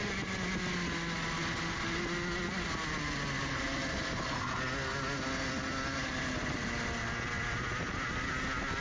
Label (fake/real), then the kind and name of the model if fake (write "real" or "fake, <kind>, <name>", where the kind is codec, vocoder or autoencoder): real